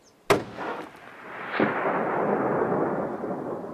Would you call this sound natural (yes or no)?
yes